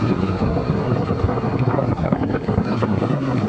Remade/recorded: remade